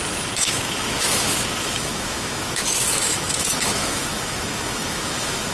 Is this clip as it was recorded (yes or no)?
no